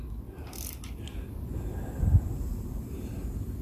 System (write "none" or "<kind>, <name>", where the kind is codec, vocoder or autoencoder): none